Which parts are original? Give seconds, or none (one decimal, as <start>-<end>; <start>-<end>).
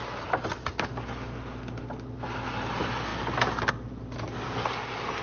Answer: 0.0-5.2